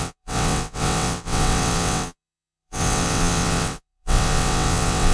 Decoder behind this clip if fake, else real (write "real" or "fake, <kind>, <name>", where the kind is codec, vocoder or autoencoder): fake, vocoder, WaveNeXt